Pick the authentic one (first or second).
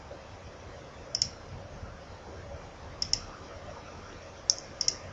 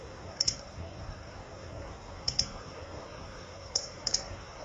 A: first